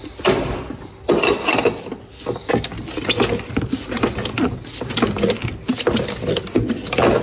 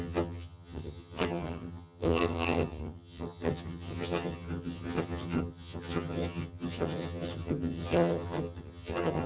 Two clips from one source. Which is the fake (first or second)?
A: second